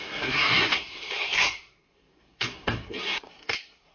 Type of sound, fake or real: fake